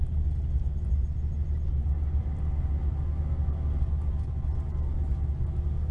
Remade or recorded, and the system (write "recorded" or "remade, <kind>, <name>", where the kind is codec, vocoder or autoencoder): recorded